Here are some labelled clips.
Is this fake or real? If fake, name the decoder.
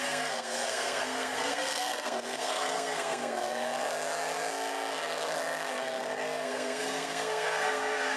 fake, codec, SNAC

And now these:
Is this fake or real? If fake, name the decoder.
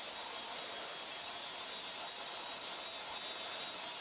real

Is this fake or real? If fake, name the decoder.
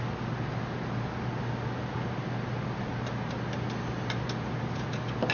real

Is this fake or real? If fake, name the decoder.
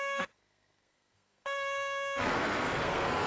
fake, codec, SNAC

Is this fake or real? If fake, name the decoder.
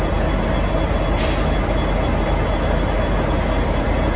real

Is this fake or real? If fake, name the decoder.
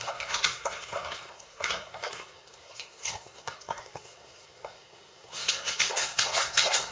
fake, codec, SNAC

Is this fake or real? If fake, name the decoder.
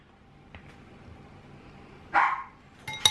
real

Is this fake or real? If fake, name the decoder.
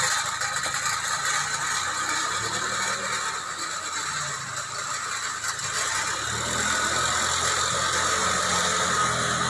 real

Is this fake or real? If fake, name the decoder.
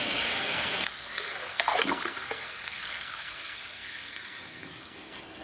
fake, codec, SNAC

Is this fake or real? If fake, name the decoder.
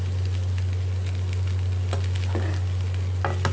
real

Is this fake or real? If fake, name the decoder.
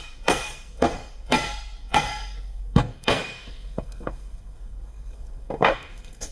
fake, codec, SNAC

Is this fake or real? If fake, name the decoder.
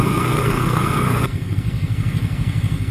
fake, codec, SNAC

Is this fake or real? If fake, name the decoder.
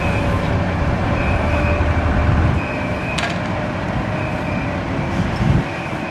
real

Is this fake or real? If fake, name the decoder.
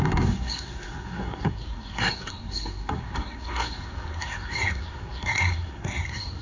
fake, codec, SNAC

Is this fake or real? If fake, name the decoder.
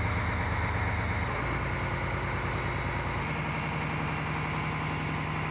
real